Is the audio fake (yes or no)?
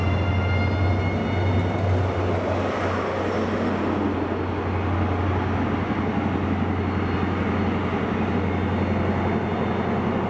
no